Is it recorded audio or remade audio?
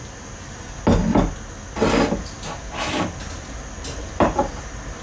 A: recorded